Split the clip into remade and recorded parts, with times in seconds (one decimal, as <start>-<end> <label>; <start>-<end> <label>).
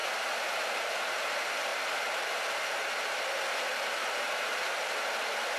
0.0-1.1 remade; 1.1-4.0 recorded; 4.0-4.7 remade; 4.7-5.6 recorded